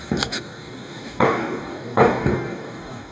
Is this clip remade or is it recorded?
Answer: remade